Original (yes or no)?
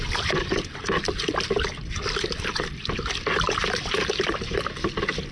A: yes